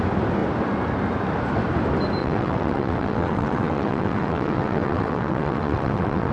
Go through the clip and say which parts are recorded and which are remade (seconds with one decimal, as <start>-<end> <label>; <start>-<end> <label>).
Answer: 0.0-2.2 recorded; 2.2-6.3 remade